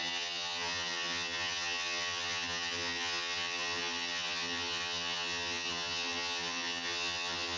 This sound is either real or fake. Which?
fake